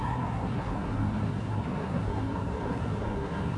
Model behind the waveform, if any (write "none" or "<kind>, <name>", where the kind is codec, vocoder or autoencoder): codec, SNAC